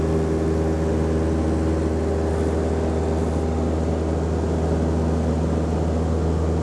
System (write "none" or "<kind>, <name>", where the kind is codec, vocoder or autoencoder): none